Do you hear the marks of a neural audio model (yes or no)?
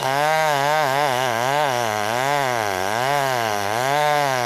yes